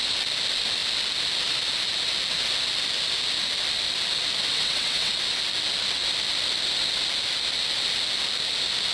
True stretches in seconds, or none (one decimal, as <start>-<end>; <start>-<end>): 0.0-4.5; 5.1-8.9